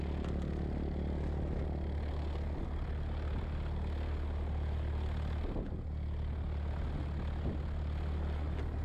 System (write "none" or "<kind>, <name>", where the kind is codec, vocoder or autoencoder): none